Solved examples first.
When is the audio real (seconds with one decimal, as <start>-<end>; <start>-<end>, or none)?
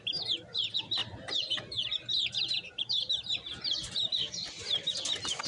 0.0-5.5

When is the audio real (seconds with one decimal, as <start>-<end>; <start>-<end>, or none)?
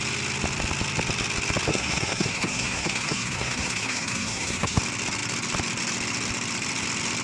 0.0-1.7; 4.8-7.2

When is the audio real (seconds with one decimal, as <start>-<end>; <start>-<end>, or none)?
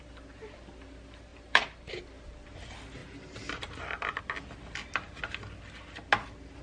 0.0-1.3; 1.9-3.0; 4.2-6.6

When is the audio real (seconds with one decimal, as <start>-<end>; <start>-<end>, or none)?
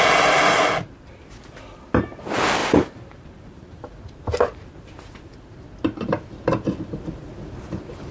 0.0-2.6; 5.1-8.1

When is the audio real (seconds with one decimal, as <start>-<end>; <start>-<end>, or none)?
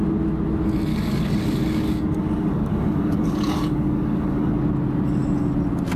0.0-0.9; 4.5-6.0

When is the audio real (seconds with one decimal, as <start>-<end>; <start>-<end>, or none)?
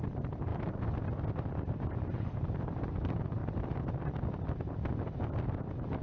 3.4-5.5